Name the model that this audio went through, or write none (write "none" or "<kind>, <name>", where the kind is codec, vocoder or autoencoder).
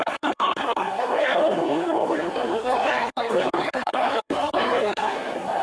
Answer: codec, SNAC